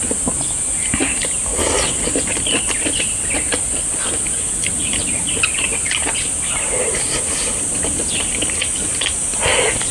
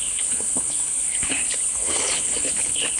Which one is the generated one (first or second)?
second